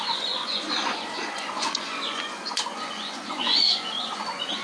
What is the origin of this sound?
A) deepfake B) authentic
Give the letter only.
A